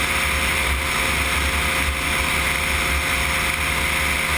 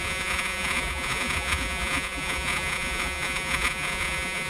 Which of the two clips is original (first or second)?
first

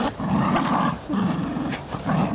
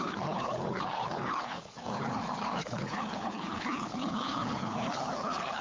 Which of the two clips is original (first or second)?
first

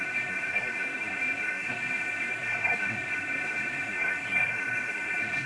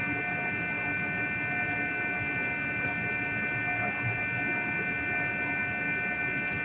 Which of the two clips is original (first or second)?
second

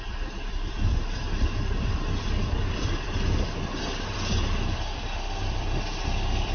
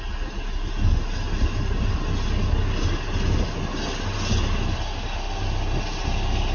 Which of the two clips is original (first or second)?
second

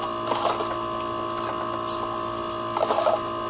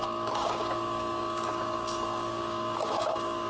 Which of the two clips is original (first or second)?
first